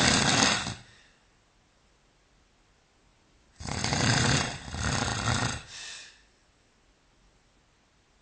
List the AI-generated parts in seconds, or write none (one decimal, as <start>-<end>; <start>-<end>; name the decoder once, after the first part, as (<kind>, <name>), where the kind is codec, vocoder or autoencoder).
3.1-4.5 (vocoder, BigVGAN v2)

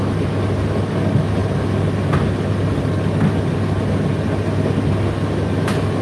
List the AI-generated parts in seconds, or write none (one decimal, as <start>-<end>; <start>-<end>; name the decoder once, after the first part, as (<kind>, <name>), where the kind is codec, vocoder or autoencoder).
none

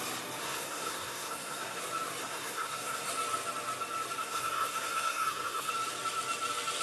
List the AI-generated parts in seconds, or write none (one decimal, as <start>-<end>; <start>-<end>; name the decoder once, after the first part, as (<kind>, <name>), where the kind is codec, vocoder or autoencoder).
0.4-1.8 (codec, SNAC); 2.2-3.1; 4.2-5.7

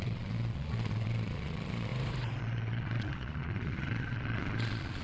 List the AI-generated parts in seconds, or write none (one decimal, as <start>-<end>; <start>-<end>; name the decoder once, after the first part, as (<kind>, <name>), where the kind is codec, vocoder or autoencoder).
0.0-1.9 (vocoder, Vocos); 2.4-5.0

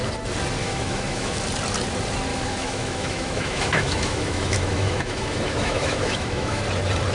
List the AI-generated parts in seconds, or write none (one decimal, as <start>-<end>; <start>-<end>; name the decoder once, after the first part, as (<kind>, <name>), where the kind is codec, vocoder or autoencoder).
0.6-1.4 (autoencoder, DAC-VAE); 2.3-6.6

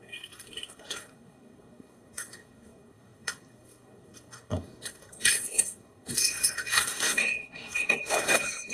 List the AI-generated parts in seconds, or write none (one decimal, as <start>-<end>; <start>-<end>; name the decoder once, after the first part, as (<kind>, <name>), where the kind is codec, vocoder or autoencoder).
0.0-8.7 (codec, SNAC)

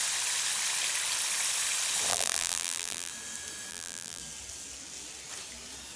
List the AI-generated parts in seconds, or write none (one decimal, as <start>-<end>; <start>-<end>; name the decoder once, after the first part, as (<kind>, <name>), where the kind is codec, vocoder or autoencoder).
2.1-3.1 (vocoder, BigVGAN v2); 3.7-4.2

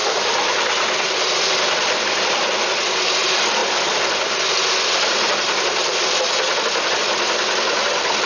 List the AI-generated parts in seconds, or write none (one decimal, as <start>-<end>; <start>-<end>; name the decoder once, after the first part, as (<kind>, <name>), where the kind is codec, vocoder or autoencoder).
none